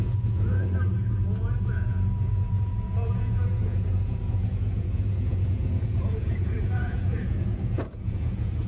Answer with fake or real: fake